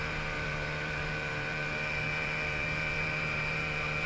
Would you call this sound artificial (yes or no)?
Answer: yes